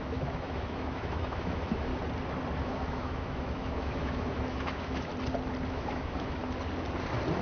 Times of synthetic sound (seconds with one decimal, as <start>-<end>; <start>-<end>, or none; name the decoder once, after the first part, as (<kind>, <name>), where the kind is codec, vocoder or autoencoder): 0.0-1.9 (autoencoder, DAC-VAE); 2.6-5.1; 5.7-6.4